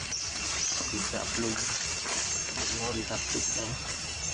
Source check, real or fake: real